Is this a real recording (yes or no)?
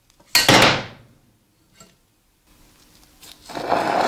yes